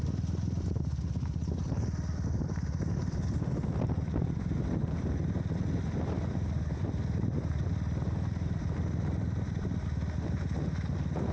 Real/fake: real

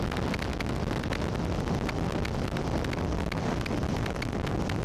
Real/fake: real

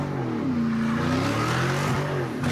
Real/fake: real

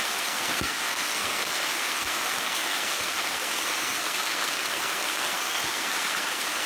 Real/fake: fake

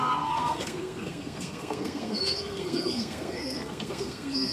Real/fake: fake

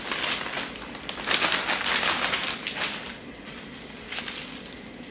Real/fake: real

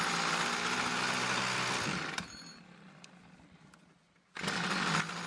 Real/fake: real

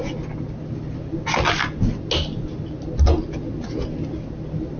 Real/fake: real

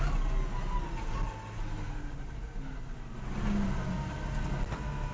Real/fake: real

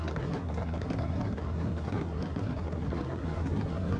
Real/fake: fake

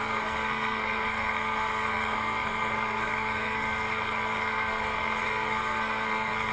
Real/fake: fake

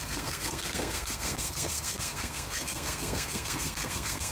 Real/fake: fake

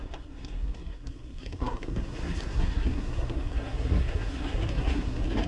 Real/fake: fake